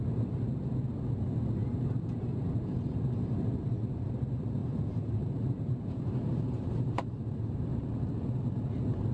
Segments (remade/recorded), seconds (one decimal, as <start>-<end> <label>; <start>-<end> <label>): 0.0-1.6 recorded; 1.6-2.5 remade; 2.5-4.6 recorded; 4.6-7.6 remade; 7.6-9.1 recorded